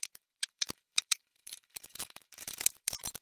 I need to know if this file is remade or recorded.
remade